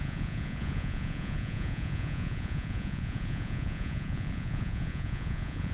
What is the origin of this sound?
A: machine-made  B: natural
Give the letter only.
A